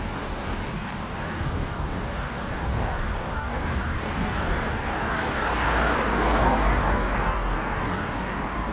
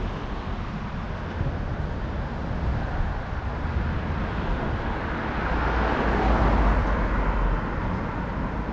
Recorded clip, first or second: second